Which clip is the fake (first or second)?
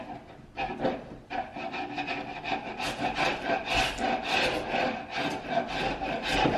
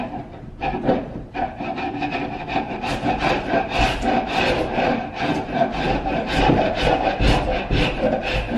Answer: second